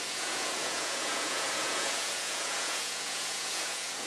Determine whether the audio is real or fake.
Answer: fake